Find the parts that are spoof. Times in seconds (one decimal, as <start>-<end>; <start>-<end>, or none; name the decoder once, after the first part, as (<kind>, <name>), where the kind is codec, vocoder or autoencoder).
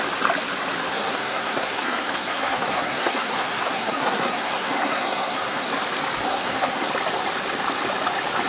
0.9-5.7 (codec, SNAC); 6.3-6.9